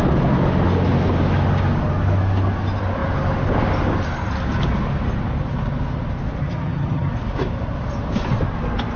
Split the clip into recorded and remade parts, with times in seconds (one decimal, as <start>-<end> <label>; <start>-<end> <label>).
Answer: 0.0-6.4 recorded; 6.4-7.1 remade; 7.1-9.0 recorded